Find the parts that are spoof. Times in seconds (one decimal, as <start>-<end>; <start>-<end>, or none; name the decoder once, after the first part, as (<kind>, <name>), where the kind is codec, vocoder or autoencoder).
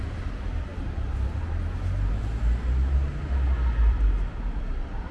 0.0-0.7 (vocoder, BigVGAN v2); 3.8-5.1